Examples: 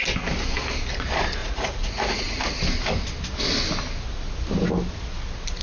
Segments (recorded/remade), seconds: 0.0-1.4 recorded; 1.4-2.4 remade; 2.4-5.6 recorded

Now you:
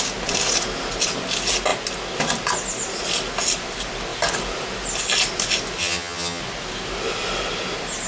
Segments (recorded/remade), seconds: 0.0-5.8 recorded; 5.8-6.4 remade; 6.4-8.1 recorded